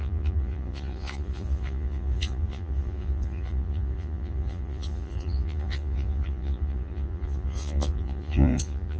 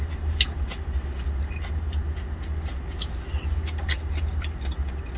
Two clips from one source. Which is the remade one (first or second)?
first